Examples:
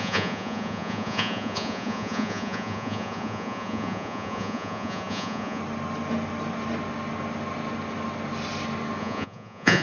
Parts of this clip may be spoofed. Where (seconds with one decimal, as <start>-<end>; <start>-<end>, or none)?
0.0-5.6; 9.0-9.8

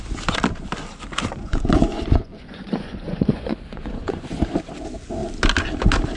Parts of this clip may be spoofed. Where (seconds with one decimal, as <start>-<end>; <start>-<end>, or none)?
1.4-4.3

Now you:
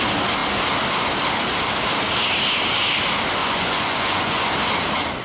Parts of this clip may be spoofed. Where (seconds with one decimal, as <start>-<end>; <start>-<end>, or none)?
3.4-4.5

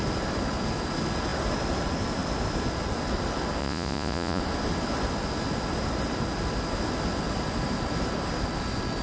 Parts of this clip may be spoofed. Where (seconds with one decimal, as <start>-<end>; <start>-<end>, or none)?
3.6-4.4